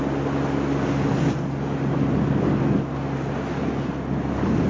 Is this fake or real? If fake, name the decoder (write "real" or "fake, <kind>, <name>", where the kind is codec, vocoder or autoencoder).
real